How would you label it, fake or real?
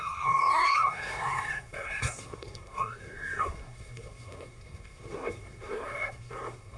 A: fake